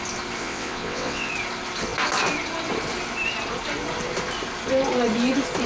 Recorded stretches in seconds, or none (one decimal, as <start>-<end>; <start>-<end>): 0.0-0.4; 1.3-5.7